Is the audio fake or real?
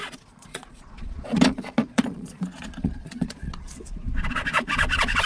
fake